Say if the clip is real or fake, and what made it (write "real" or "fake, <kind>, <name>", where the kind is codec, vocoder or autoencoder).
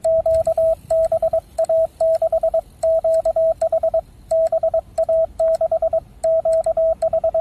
real